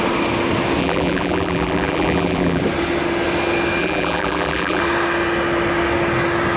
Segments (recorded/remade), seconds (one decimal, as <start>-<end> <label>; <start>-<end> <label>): 0.0-0.8 recorded; 0.8-2.6 remade; 2.6-3.8 recorded; 3.8-4.8 remade; 4.8-6.6 recorded